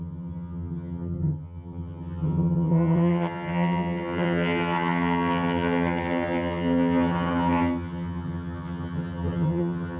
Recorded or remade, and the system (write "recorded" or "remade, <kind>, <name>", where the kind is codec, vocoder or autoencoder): remade, vocoder, HiFi-GAN